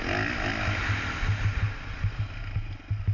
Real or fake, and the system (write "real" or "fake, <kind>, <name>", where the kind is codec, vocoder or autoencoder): real